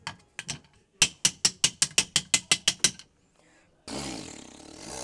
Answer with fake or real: real